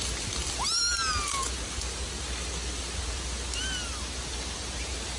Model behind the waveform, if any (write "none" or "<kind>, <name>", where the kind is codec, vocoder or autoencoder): none